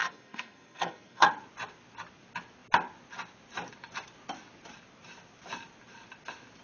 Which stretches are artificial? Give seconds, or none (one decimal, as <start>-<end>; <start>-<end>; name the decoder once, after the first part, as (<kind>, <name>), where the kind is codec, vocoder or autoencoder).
0.0-1.3 (codec, SNAC)